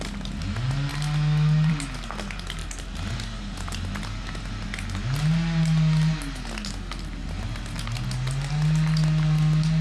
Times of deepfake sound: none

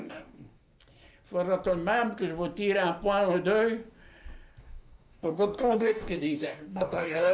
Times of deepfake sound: 0.0-0.7 (codec, DAC); 4.6-7.3

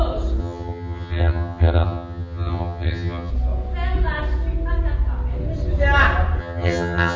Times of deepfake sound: 0.4-3.3 (vocoder, HiFi-GAN); 6.4-7.2